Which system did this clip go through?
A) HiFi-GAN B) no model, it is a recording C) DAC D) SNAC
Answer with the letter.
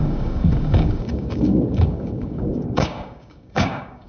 C